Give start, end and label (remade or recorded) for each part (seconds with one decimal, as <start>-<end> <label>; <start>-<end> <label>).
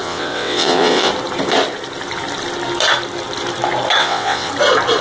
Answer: 0.0-1.1 remade; 1.1-4.0 recorded; 4.0-4.5 remade; 4.5-5.0 recorded